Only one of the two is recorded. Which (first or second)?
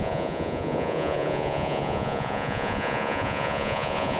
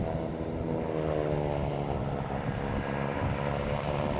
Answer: second